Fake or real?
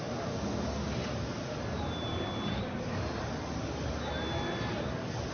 real